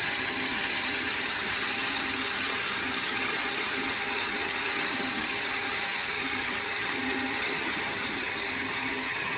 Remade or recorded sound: remade